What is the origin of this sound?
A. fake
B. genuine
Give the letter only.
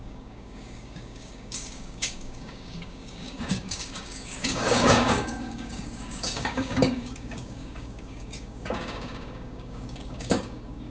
A